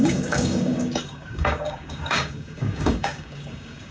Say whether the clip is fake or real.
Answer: fake